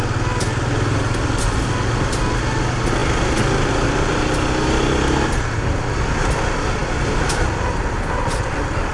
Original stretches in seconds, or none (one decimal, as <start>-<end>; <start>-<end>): 0.0-8.9